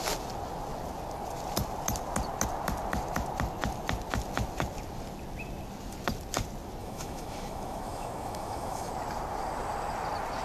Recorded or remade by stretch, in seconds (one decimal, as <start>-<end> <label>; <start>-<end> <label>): 0.0-6.8 recorded; 6.8-8.9 remade; 8.9-10.4 recorded